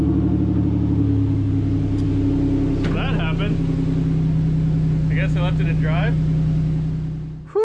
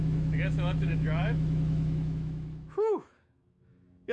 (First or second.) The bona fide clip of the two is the first